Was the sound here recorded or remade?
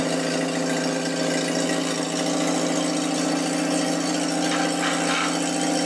recorded